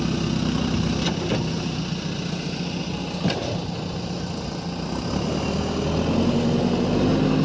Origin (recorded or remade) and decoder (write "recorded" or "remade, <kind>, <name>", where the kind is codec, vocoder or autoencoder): recorded